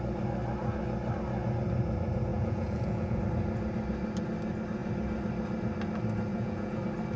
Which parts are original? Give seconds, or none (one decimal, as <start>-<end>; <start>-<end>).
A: 0.0-2.3; 3.2-6.3; 6.8-7.2